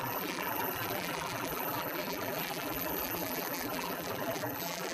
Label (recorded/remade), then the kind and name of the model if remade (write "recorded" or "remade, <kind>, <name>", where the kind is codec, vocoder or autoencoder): remade, vocoder, BigVGAN v2